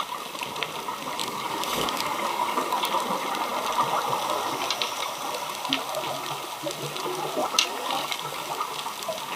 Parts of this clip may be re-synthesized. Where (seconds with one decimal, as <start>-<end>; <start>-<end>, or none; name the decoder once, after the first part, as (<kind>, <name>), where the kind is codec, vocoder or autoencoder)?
1.2-2.8 (codec, DAC); 7.4-8.5